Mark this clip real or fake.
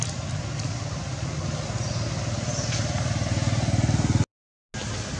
real